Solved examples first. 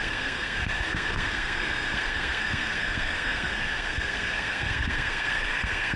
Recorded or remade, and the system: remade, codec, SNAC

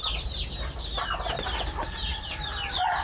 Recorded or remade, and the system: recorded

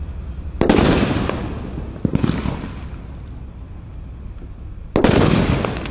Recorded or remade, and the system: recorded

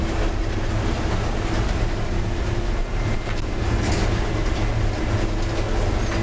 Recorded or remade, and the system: recorded